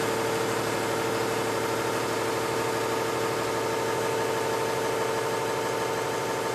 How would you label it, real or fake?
real